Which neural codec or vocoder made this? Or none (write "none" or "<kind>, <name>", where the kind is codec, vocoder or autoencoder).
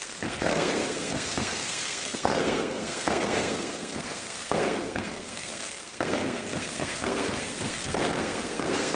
codec, SNAC